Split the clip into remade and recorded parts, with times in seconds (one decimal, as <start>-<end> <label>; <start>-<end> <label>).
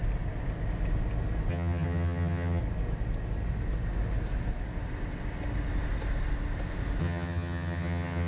0.0-1.5 recorded; 1.5-2.6 remade; 2.6-7.0 recorded; 7.0-8.3 remade